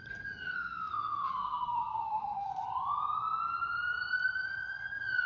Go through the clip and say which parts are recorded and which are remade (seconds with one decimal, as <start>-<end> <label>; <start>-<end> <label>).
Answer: 0.0-0.5 recorded; 0.5-2.5 remade; 2.5-5.3 recorded